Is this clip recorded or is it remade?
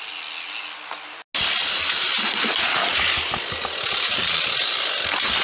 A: recorded